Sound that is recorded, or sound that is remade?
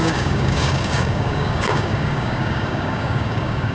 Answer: remade